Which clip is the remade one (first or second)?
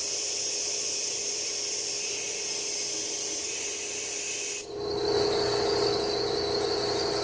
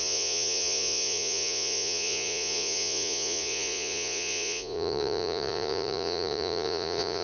second